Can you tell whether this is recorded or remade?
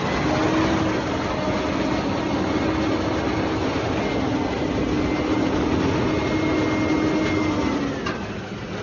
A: recorded